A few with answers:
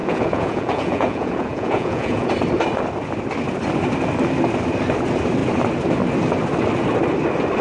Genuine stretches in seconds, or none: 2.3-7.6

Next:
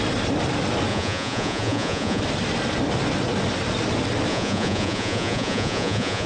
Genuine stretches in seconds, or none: 0.0-0.9; 2.2-4.3